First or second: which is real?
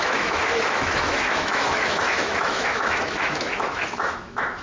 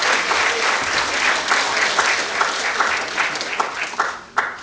second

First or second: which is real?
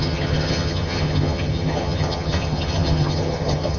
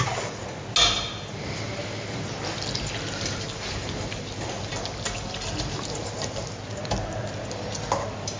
second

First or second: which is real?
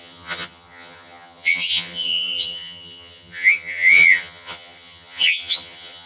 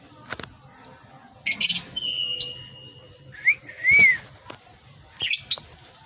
second